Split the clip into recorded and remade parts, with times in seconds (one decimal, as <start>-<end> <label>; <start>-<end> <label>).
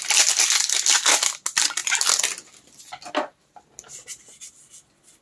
0.0-5.2 recorded